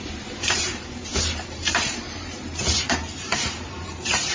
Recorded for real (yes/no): no